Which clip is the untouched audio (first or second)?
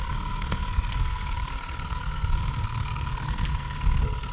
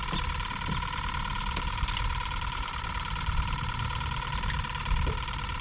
second